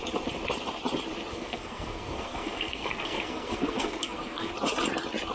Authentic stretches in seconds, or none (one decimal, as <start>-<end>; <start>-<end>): 0.0-1.3; 4.5-5.3